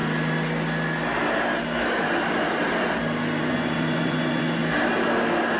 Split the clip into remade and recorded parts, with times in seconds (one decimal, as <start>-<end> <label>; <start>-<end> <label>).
0.0-3.4 recorded; 3.4-4.6 remade; 4.6-5.6 recorded